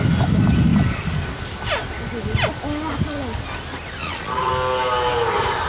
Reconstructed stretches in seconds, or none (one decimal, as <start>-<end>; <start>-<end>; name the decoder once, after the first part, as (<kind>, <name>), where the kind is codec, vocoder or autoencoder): 4.0-4.5 (vocoder, Vocos)